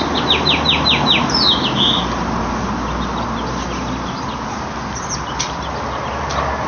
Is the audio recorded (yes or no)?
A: yes